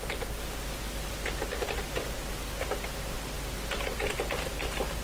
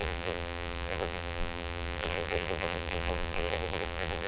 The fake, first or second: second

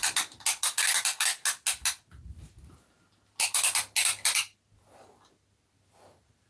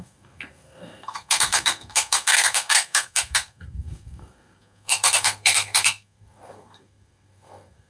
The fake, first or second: second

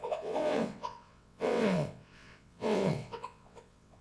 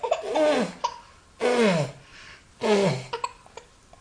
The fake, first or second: first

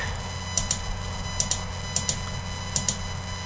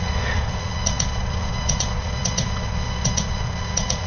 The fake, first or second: second